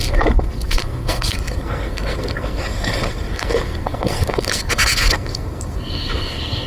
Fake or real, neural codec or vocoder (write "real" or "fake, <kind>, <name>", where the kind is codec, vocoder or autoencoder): fake, codec, SNAC